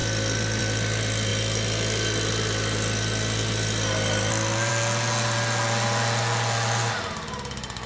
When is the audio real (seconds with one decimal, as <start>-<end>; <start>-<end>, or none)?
0.0-7.9